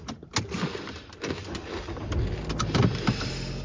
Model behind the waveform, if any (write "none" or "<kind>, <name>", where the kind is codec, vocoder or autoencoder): none